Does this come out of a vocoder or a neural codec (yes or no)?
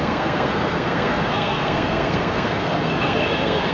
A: yes